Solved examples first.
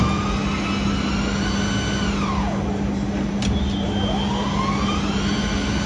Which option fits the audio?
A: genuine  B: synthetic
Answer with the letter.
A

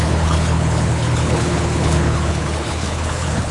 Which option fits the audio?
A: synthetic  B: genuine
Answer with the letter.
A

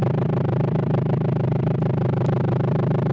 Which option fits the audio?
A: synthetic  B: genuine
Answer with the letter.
B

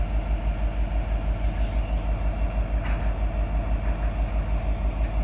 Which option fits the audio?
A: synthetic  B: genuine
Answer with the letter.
B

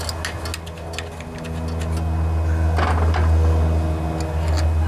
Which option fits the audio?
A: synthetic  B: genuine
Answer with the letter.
B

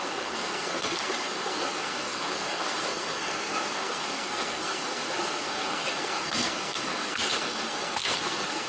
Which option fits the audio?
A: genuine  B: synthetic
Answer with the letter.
B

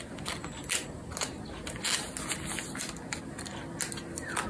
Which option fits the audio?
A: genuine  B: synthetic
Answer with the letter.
A